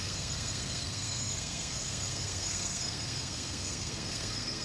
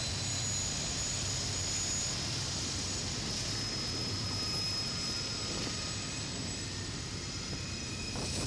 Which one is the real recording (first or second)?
second